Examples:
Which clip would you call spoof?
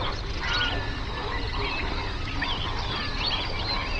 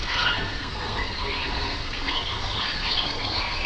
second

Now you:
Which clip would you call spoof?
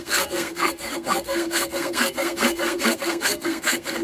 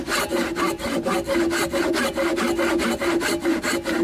first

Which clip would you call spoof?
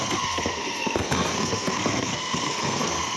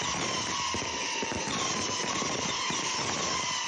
first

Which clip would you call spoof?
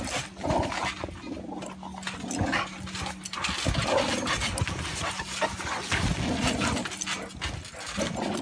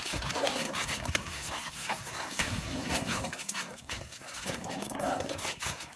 second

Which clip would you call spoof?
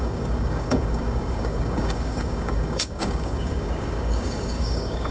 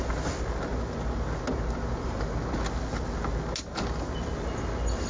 first